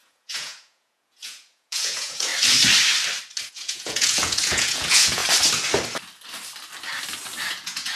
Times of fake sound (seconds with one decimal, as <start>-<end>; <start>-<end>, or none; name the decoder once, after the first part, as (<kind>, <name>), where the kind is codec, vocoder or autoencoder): 0.0-2.3 (vocoder, Vocos); 3.4-5.2; 7.5-8.0